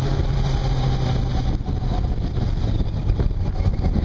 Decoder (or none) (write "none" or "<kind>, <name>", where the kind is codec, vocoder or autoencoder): none